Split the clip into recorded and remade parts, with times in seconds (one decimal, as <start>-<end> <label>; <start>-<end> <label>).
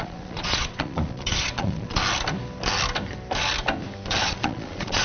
0.0-2.0 remade; 2.0-4.2 recorded; 4.2-5.0 remade